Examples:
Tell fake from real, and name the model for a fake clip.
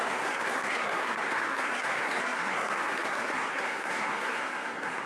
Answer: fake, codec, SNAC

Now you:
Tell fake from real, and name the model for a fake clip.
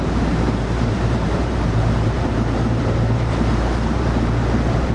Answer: fake, vocoder, BigVGAN v2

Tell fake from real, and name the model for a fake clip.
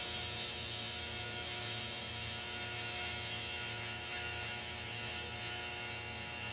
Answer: fake, autoencoder, DAC-VAE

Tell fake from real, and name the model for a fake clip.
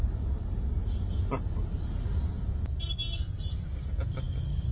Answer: real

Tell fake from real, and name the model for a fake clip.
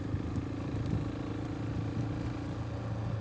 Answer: real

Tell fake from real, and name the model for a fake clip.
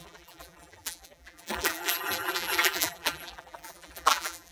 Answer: fake, vocoder, BigVGAN v2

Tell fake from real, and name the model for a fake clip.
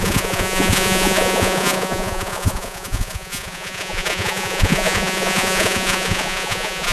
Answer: fake, vocoder, Vocos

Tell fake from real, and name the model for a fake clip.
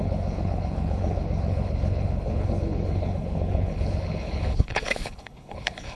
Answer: fake, codec, HILCodec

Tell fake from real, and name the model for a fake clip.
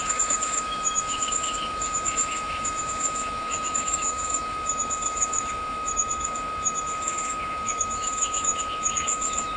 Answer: fake, autoencoder, DAC-VAE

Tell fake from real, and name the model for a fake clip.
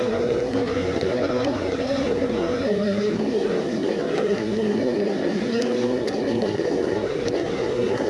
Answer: fake, codec, SNAC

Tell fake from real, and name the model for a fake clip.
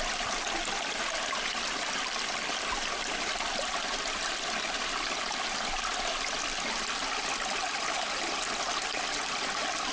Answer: real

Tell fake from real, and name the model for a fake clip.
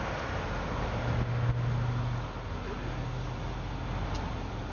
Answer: real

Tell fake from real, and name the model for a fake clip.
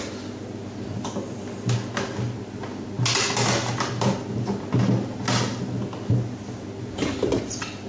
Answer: real